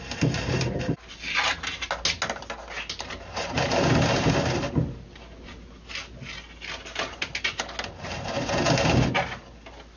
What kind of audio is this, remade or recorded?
recorded